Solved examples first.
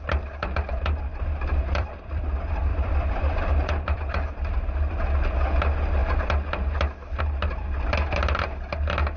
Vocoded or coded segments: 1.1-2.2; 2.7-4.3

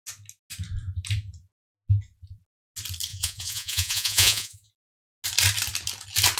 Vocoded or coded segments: 3.1-4.7

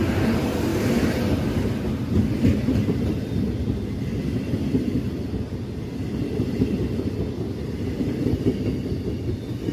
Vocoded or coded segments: none

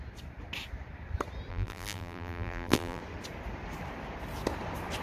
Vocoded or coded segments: 1.5-3.0

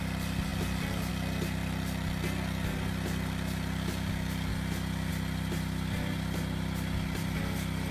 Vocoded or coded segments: none

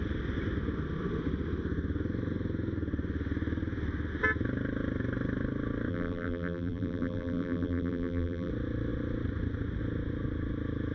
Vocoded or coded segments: 5.9-8.5

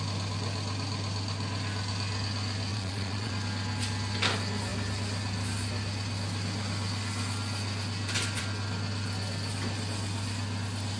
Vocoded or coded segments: 2.7-3.3

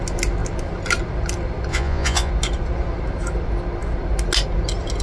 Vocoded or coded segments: 1.7-2.3